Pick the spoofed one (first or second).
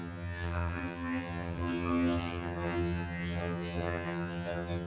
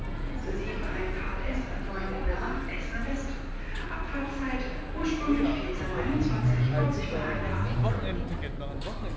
first